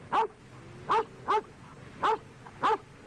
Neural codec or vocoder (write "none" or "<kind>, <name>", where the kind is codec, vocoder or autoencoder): none